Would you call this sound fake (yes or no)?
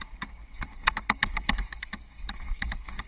yes